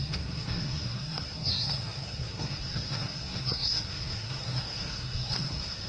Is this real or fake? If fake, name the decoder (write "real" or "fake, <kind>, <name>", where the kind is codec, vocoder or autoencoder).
fake, codec, SNAC